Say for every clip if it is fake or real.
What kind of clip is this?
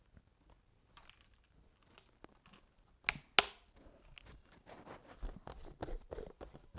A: real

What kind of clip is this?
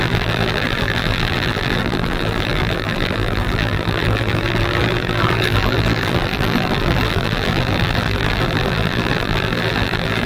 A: fake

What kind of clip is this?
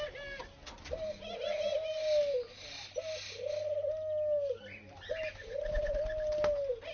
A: real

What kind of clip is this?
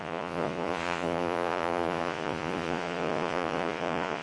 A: fake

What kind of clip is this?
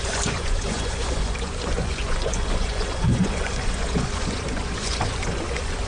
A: fake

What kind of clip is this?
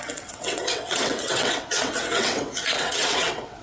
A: fake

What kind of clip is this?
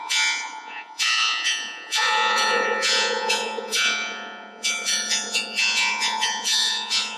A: fake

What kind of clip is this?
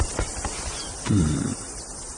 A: real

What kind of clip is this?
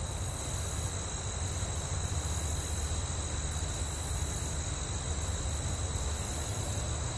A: real